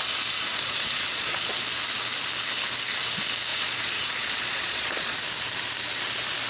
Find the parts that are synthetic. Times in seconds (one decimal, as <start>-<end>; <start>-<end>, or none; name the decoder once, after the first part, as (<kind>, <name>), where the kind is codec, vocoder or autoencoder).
0.5-1.6 (vocoder, Vocos); 3.5-5.2